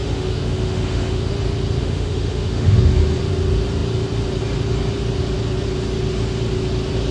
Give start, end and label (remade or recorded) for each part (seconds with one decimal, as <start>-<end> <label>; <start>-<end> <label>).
0.0-1.3 remade; 1.3-1.8 recorded; 1.8-3.0 remade; 3.0-7.1 recorded